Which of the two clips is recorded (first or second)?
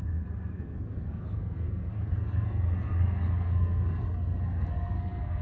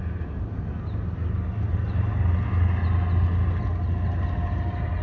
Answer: second